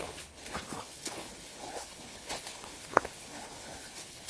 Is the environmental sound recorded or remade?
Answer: remade